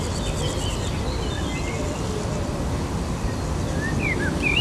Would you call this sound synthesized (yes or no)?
no